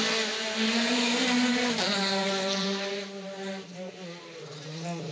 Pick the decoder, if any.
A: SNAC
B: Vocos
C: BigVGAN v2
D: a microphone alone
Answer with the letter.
C